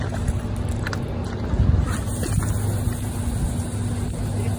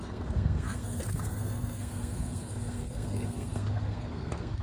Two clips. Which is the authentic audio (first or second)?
first